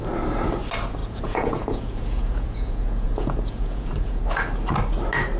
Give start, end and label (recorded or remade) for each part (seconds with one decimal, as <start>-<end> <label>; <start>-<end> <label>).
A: 0.0-1.0 recorded; 1.0-4.2 remade; 4.2-5.4 recorded